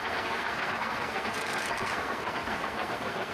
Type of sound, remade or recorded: remade